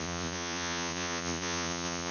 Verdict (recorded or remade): remade